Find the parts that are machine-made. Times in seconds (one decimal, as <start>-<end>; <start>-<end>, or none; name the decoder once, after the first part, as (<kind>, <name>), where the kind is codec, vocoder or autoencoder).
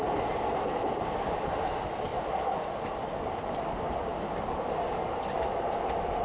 none